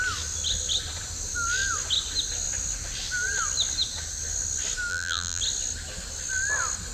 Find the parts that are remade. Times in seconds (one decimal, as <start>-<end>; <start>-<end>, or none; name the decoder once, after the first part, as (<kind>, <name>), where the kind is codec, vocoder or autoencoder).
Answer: 4.9-5.4 (vocoder, BigVGAN v2)

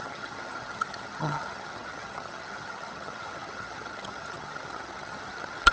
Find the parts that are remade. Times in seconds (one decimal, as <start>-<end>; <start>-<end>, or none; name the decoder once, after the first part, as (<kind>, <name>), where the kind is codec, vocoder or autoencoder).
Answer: 0.0-5.7 (vocoder, HiFi-GAN)

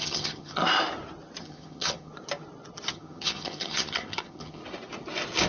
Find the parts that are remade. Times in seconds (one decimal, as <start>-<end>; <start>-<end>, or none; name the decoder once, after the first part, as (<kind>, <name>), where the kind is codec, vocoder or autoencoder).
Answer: 0.0-0.6 (vocoder, HiFi-GAN); 1.4-2.1; 2.9-4.6

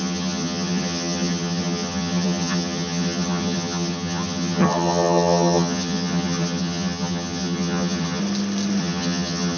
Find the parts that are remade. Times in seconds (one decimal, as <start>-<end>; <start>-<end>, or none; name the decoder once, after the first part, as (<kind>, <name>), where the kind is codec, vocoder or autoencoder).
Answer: 0.0-8.2 (vocoder, HiFi-GAN); 8.8-9.6

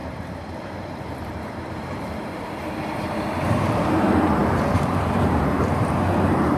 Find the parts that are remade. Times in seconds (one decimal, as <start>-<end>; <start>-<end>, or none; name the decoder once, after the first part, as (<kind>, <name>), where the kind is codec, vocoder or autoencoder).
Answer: 0.0-6.6 (vocoder, BigVGAN v2)

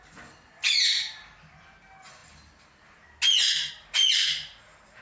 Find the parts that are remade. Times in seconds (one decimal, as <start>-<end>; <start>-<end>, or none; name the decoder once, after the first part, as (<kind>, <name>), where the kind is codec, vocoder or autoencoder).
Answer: none